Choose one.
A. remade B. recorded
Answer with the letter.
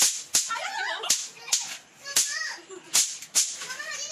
B